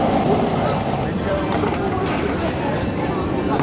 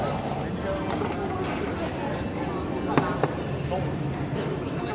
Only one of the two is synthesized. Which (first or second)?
first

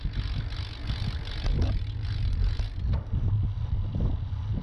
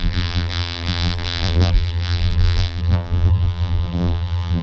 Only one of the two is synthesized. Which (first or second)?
second